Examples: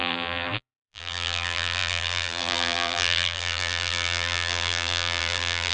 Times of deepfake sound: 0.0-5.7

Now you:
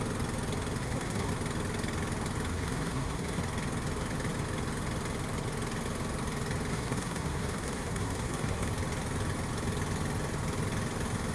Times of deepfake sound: 0.8-1.3; 2.5-3.4; 6.7-8.7

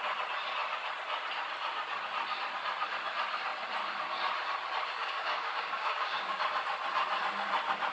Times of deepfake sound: 5.0-6.4

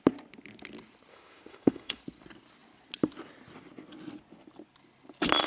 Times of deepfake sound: 1.1-2.0

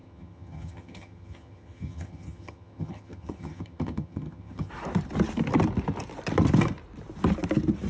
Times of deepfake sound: 0.0-4.7

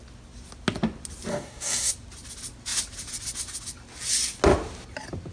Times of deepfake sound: 1.3-1.9

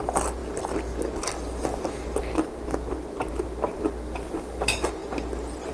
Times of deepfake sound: none